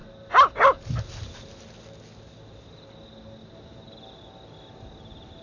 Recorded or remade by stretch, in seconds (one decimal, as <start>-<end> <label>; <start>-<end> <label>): 0.0-5.4 recorded